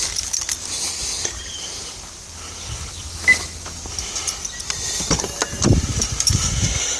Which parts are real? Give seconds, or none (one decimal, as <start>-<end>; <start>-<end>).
0.0-2.9; 3.8-7.0

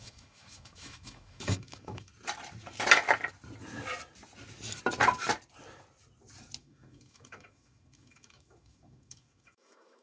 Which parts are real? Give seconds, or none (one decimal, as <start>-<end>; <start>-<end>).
2.1-6.6

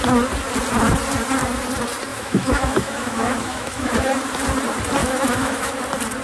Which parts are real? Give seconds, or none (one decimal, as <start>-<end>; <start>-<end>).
0.0-2.1; 3.9-5.0; 5.8-6.2

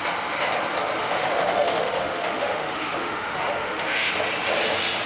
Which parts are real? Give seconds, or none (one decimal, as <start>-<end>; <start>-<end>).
0.0-1.0; 4.1-5.1

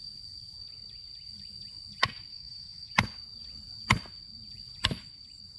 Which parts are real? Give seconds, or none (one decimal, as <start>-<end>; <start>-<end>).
0.0-2.3; 2.9-5.6

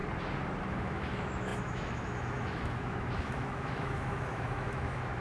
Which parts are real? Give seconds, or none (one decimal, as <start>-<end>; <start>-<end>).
0.0-0.7

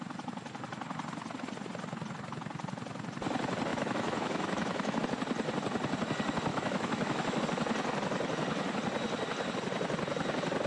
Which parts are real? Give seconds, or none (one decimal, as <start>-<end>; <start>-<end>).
0.0-3.7; 5.0-6.5; 7.4-10.7